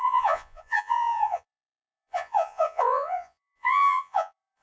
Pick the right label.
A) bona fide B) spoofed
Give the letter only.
B